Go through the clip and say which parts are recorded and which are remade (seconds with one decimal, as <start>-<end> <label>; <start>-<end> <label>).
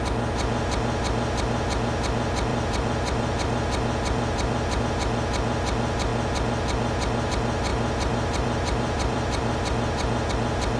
0.0-2.5 recorded; 2.5-4.8 remade; 4.8-7.7 recorded; 7.7-10.3 remade; 10.3-10.8 recorded